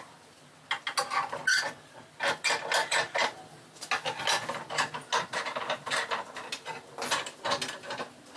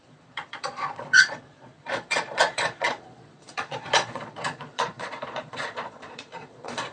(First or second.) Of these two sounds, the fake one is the second